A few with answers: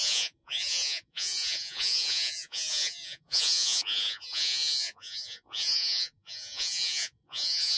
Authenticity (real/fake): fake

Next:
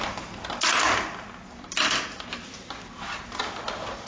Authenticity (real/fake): real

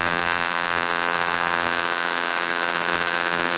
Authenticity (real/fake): fake